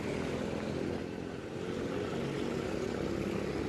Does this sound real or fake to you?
real